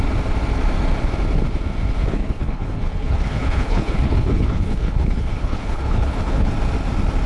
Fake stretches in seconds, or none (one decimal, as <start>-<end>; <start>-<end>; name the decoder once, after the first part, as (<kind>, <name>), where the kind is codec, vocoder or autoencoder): 2.1-6.5 (codec, HILCodec)